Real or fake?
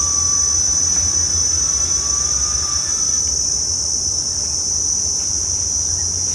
real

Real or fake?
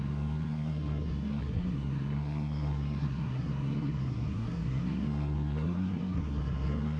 fake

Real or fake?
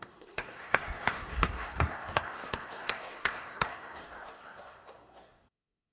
fake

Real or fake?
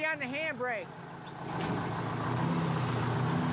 real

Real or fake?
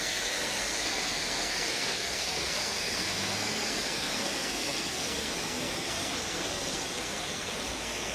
fake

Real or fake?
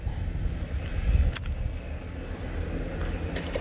real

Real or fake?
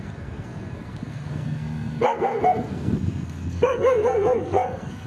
fake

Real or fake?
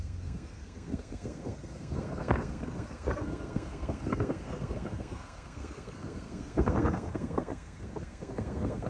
fake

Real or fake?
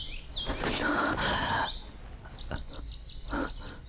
real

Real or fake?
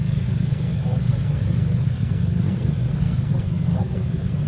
fake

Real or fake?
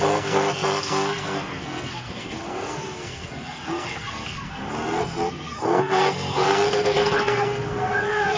fake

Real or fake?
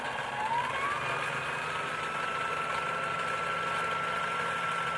real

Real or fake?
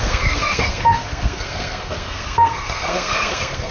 fake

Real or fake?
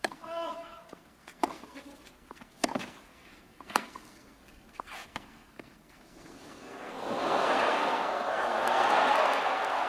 fake